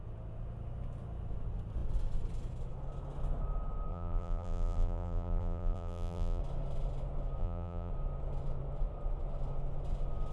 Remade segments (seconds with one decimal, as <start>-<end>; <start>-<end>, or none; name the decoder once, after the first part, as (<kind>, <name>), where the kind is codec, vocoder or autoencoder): 3.9-6.4 (vocoder, BigVGAN v2); 7.4-7.9